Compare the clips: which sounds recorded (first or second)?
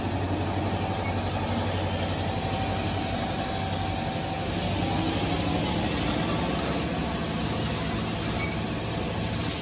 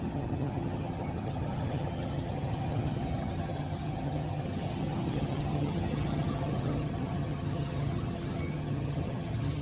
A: first